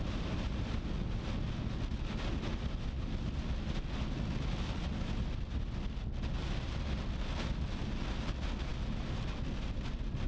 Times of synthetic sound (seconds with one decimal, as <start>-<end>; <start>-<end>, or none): none